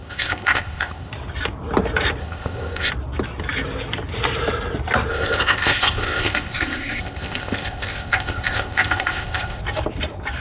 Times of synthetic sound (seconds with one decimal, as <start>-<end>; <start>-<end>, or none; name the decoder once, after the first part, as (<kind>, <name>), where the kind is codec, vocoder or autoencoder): 0.0-1.1 (codec, ZipCodec); 2.2-2.9; 5.1-9.6